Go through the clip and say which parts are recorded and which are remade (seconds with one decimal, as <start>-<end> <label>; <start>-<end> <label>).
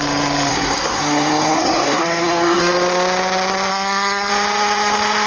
0.0-0.5 recorded; 0.5-2.6 remade; 2.6-3.7 recorded; 3.7-4.3 remade; 4.3-5.3 recorded